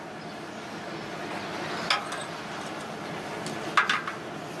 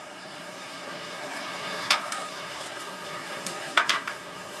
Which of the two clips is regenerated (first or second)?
second